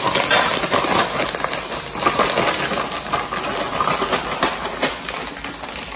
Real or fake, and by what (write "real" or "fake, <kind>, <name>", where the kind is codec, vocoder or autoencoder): real